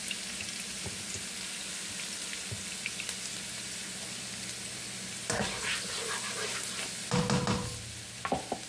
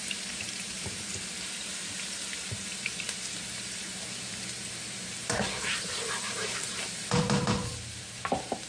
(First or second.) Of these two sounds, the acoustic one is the first